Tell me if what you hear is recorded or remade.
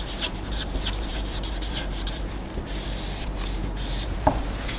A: remade